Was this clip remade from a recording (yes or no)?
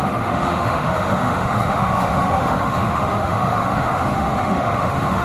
yes